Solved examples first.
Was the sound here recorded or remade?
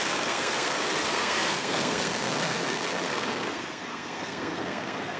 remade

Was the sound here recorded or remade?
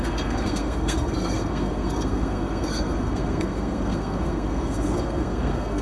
remade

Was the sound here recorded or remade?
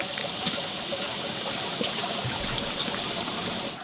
recorded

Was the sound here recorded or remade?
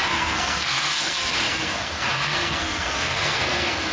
remade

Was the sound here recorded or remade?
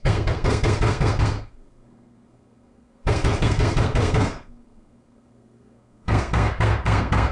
remade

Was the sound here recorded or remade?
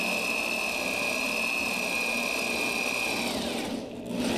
recorded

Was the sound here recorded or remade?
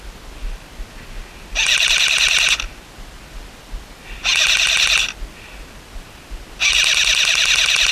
recorded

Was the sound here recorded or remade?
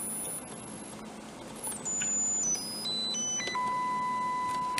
recorded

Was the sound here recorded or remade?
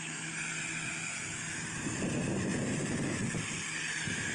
recorded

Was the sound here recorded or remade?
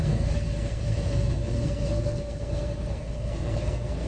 remade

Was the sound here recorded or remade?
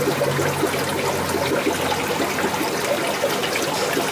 recorded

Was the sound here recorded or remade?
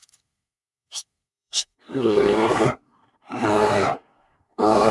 remade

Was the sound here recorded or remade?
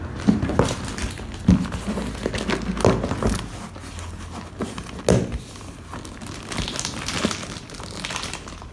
recorded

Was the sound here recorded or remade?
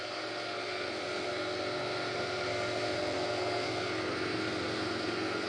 remade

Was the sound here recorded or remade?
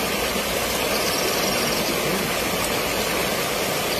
recorded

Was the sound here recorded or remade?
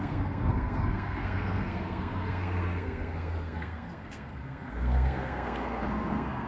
remade